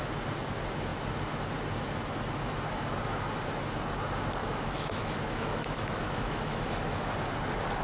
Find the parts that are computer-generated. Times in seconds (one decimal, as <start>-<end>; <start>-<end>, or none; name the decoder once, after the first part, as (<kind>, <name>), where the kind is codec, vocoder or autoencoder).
4.4-7.1 (autoencoder, DAC-VAE)